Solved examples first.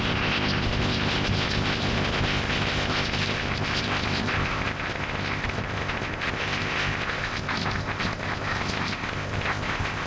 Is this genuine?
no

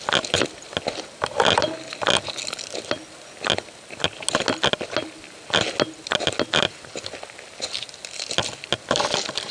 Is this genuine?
yes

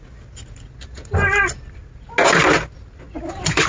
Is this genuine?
yes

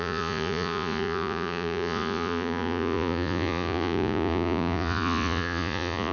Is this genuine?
no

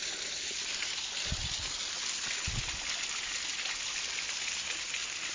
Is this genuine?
yes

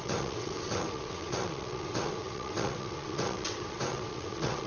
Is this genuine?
no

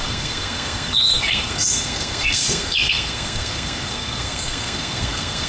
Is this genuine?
no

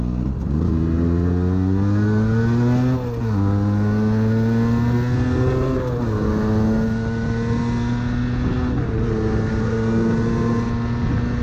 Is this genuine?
yes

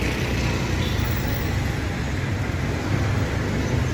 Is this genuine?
yes